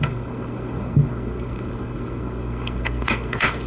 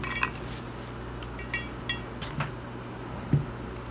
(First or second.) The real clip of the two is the second